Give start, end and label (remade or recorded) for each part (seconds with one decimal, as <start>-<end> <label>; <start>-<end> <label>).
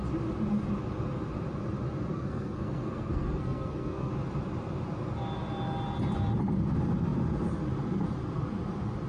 0.0-2.1 recorded; 2.1-4.1 remade; 4.1-9.1 recorded